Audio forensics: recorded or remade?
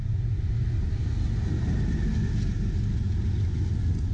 recorded